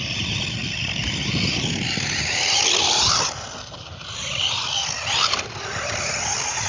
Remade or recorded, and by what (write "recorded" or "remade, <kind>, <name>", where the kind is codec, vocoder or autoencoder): recorded